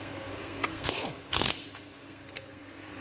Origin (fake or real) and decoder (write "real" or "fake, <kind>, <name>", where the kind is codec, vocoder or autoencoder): fake, codec, SNAC